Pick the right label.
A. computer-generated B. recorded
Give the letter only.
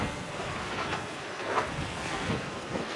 A